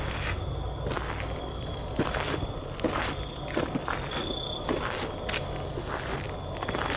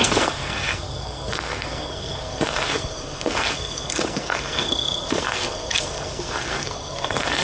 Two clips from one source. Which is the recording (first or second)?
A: first